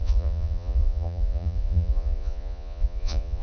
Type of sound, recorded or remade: remade